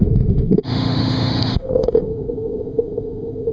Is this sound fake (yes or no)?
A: yes